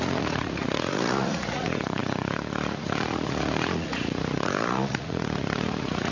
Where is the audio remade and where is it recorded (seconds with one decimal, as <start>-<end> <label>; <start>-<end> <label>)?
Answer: 0.0-6.1 remade